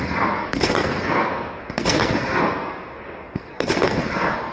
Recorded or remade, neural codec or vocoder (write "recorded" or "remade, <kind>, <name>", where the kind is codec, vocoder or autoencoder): remade, codec, SNAC